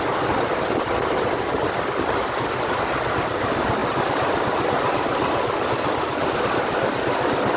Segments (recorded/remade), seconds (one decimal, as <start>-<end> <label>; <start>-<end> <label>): 0.0-7.6 recorded

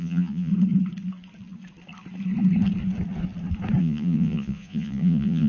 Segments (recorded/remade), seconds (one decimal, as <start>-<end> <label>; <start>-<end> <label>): 0.0-0.5 remade; 0.5-3.8 recorded; 3.8-5.5 remade

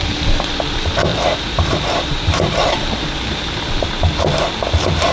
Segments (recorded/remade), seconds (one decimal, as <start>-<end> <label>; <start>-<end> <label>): 0.0-1.1 recorded; 1.1-4.2 remade; 4.2-5.1 recorded